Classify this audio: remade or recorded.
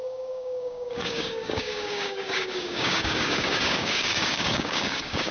remade